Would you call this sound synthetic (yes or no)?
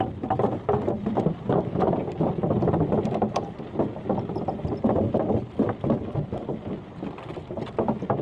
no